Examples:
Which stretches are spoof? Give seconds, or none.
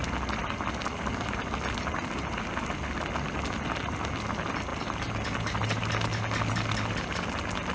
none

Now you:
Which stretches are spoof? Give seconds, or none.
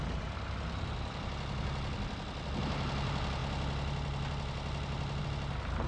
none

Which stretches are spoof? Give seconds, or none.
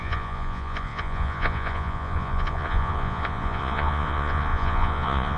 0.0-5.4 (vocoder, Vocos)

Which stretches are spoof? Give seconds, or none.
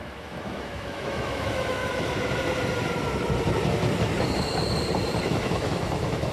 0.0-1.8 (autoencoder, DAC-VAE); 5.2-6.3